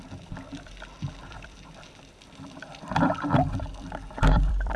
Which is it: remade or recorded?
remade